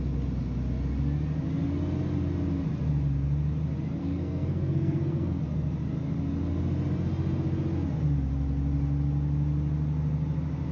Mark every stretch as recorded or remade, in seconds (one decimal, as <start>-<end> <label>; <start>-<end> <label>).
0.0-4.0 recorded; 4.0-5.4 remade; 5.4-10.7 recorded